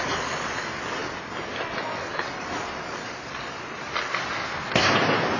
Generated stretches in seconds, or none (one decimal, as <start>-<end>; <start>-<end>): 1.0-4.2